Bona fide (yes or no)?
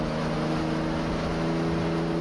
yes